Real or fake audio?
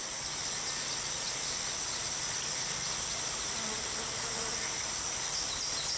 real